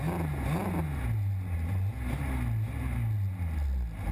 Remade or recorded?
recorded